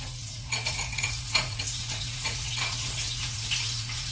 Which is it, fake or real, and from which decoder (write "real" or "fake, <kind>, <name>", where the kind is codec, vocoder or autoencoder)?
fake, vocoder, Vocos